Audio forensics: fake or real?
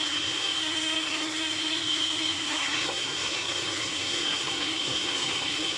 fake